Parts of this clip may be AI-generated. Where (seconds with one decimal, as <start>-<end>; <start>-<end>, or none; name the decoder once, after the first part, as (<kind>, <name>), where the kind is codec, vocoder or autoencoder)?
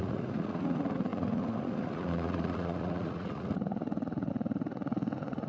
0.0-5.5 (vocoder, Vocos)